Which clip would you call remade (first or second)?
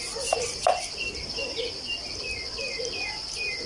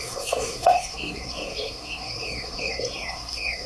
second